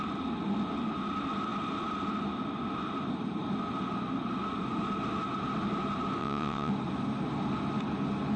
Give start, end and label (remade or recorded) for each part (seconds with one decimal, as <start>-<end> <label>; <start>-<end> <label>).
0.0-6.2 recorded; 6.2-6.7 remade; 6.7-8.4 recorded